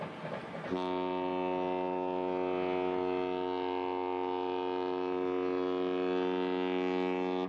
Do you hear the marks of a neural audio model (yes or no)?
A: no